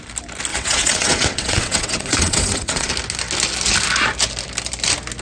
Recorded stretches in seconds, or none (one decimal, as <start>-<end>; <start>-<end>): 0.0-0.5; 2.9-5.2